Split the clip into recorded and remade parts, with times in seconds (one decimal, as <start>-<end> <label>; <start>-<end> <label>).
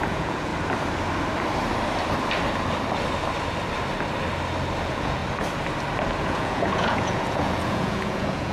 0.0-0.5 remade; 0.5-4.8 recorded; 4.8-5.2 remade; 5.2-6.2 recorded; 6.2-8.5 remade